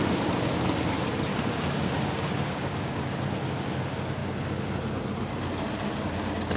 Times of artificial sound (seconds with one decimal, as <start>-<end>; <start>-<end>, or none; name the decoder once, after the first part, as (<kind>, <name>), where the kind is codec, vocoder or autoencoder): 1.3-3.0 (codec, DAC)